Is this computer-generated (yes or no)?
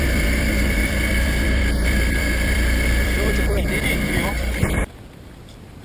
yes